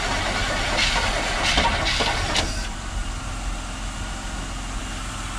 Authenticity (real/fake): real